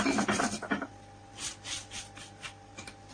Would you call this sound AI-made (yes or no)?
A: no